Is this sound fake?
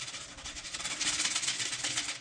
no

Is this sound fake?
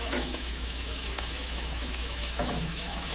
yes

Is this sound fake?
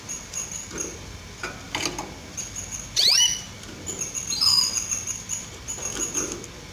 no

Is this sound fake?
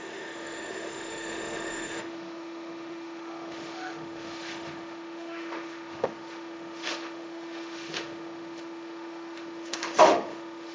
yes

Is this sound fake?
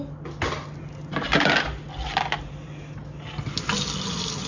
no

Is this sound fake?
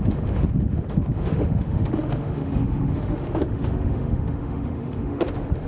yes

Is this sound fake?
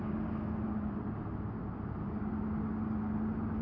no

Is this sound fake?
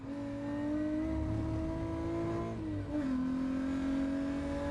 no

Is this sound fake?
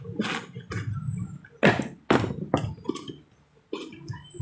no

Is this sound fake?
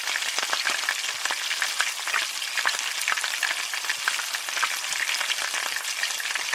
no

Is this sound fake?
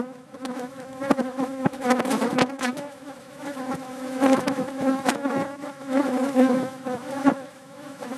yes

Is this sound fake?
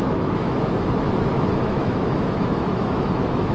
yes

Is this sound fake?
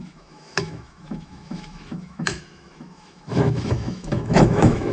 yes